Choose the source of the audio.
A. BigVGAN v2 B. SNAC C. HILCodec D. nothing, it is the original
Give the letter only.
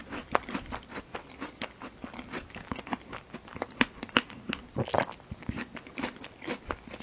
D